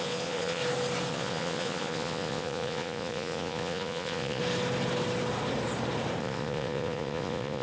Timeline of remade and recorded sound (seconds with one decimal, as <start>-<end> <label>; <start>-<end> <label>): 0.0-0.6 remade; 0.6-1.1 recorded; 1.1-4.4 remade; 4.4-6.2 recorded; 6.2-7.6 remade